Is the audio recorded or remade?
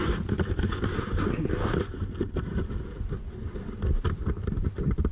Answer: recorded